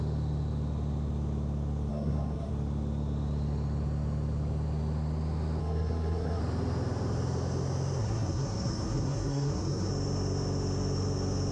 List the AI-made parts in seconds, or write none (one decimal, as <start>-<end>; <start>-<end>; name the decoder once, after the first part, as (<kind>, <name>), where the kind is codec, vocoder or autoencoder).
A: 1.9-2.5 (codec, SNAC); 5.6-6.4; 8.0-9.9